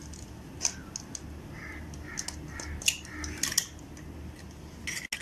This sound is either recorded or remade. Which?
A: recorded